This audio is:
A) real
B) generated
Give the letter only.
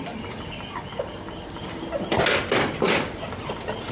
A